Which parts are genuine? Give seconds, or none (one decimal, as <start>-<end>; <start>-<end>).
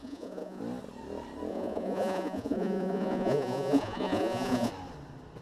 0.6-1.5; 4.7-5.4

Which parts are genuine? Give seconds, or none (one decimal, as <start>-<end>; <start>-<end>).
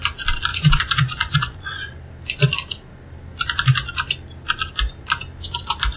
0.0-0.5; 2.0-6.0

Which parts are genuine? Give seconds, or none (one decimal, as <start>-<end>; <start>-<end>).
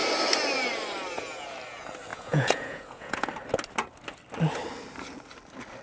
0.0-2.1; 3.3-5.8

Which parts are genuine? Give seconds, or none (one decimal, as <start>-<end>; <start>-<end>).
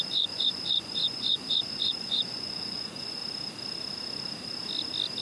3.2-5.2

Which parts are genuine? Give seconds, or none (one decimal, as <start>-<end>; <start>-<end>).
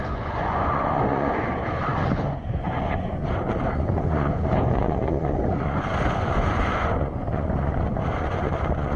none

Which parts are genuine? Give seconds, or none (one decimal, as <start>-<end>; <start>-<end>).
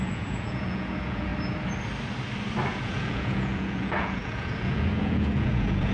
1.3-2.7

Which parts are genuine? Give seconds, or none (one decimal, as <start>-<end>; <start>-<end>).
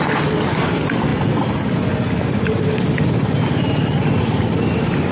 0.0-5.1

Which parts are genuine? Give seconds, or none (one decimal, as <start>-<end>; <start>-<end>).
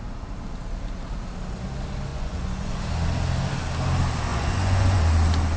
0.0-2.1; 2.8-4.3; 5.0-5.6